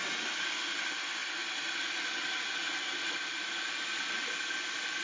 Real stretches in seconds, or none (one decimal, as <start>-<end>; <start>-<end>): 0.0-5.0